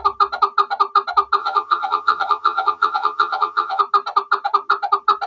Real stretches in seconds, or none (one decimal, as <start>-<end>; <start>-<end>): 0.0-1.4; 3.8-5.3